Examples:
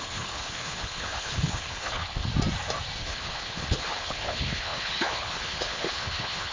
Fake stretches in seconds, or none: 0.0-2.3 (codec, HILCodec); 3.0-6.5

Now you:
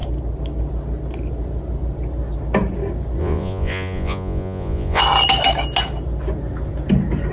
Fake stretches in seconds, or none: 3.2-5.0 (vocoder, Vocos)

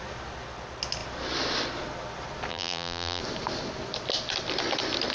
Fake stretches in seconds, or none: 2.5-3.2 (vocoder, BigVGAN v2)

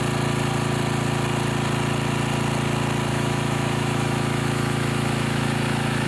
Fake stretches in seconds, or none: 3.1-6.1 (autoencoder, DAC-VAE)

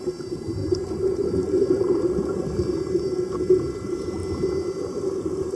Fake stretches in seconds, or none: 0.0-4.2 (vocoder, BigVGAN v2)

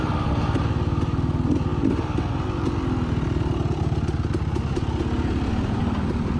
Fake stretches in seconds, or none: none